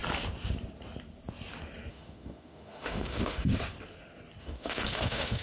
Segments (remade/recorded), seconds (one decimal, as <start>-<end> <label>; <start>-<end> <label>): 0.0-1.9 recorded; 1.9-3.5 remade; 3.5-4.4 recorded; 4.4-5.4 remade